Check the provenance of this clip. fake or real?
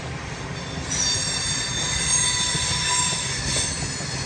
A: real